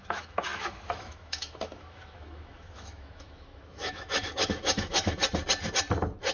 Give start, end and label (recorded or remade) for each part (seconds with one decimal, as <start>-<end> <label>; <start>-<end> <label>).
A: 0.0-5.2 remade; 5.2-6.3 recorded